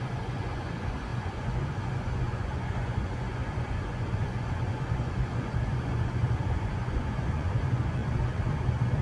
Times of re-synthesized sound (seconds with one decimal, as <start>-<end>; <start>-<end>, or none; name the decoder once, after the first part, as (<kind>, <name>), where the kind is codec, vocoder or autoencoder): 0.0-9.0 (vocoder, Vocos)